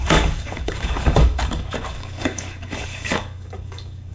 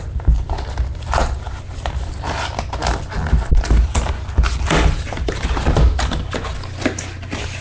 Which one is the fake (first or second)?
first